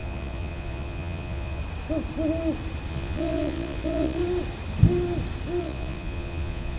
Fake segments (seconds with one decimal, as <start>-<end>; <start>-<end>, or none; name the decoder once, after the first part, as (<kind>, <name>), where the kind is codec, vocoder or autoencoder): 0.0-1.6 (vocoder, Vocos); 2.9-4.2; 5.6-6.8